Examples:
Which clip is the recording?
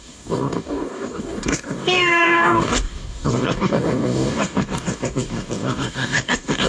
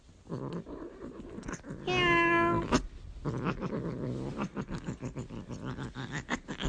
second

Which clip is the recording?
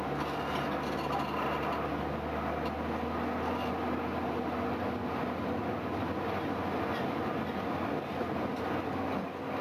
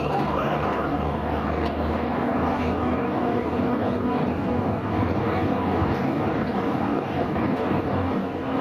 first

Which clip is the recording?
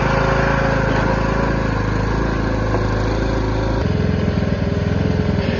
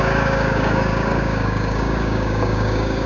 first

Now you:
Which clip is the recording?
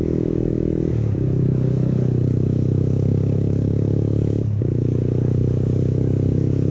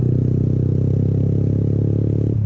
second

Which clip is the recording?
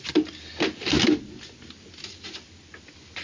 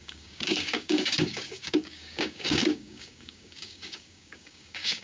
first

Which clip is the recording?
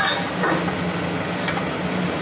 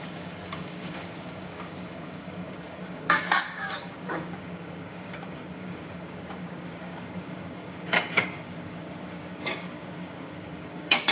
first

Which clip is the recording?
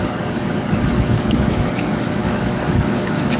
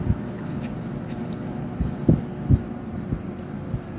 second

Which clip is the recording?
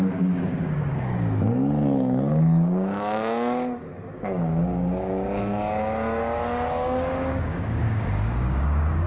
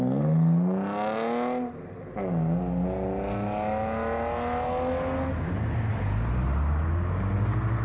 second